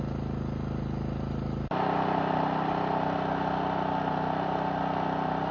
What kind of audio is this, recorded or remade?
recorded